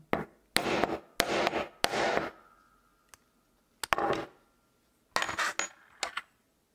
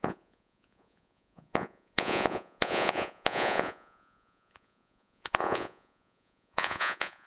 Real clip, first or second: first